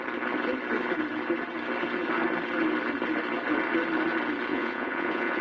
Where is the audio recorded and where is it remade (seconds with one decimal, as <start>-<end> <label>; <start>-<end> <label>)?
0.0-4.5 recorded; 4.5-5.4 remade